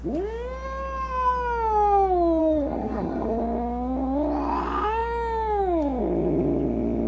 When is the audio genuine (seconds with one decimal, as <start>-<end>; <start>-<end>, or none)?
0.0-2.4; 3.4-7.1